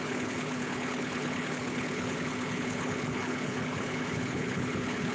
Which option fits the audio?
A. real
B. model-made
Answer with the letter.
B